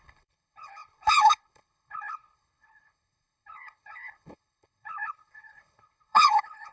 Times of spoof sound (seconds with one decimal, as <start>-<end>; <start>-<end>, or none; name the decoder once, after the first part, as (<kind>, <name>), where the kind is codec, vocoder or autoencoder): 0.0-6.7 (codec, HILCodec)